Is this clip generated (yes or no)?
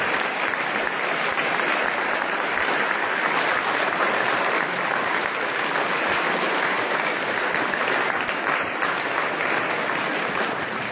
no